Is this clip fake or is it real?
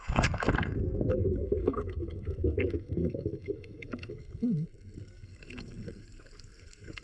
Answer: fake